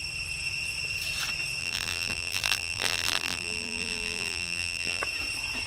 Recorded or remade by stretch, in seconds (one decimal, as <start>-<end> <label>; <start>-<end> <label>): 0.0-1.6 recorded; 1.6-5.0 remade; 5.0-5.7 recorded